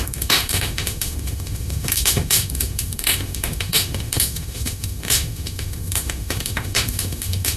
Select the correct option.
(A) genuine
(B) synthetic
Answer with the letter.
B